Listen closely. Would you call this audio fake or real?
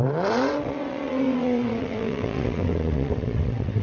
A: fake